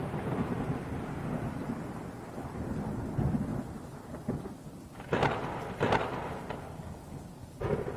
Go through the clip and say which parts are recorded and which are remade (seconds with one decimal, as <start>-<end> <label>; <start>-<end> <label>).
0.0-8.0 recorded